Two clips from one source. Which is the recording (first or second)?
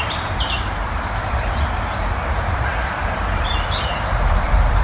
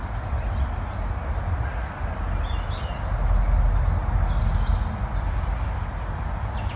second